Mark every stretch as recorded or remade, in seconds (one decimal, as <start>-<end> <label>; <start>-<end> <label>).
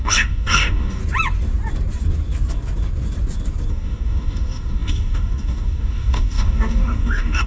0.0-1.0 remade; 1.0-3.7 recorded; 3.7-7.5 remade